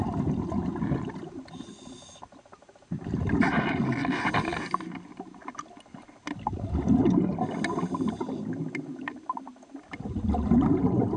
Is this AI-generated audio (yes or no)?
no